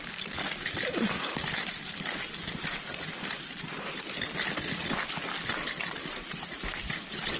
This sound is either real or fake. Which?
real